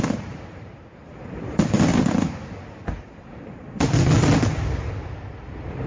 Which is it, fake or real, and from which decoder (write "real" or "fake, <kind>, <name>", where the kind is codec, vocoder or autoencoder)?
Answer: real